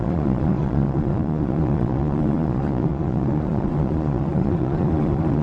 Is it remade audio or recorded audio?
remade